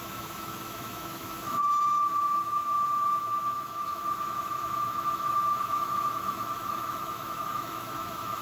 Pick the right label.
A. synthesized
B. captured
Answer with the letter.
A